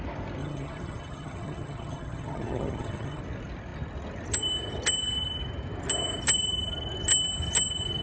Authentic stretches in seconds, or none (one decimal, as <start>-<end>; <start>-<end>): 0.0-0.4; 3.2-8.0